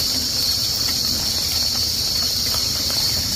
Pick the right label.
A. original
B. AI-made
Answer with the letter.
B